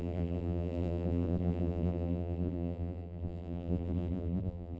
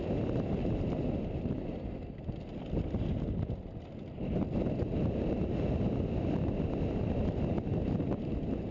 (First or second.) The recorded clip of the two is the second